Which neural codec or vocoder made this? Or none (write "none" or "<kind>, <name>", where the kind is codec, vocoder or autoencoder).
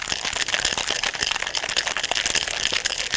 none